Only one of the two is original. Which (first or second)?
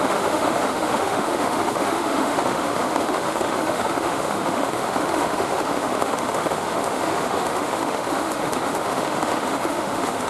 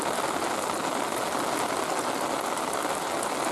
second